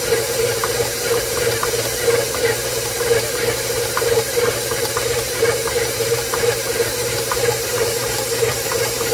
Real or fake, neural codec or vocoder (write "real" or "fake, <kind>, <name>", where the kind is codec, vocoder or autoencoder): fake, vocoder, BigVGAN v2